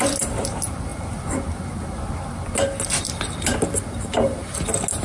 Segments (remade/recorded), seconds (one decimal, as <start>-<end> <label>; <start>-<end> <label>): 0.0-5.0 recorded